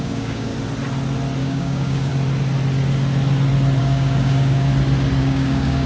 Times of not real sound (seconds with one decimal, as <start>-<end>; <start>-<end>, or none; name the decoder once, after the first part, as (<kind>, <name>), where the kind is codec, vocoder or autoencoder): 0.0-0.5 (codec, DAC); 1.4-2.1; 3.8-4.7; 5.2-5.9